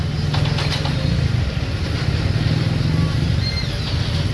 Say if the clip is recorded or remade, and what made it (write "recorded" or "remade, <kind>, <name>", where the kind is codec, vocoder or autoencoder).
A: recorded